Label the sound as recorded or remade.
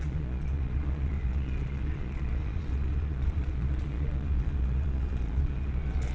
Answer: remade